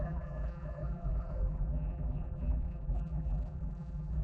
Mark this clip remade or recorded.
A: remade